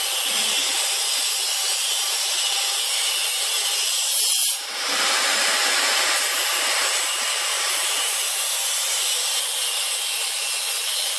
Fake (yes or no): yes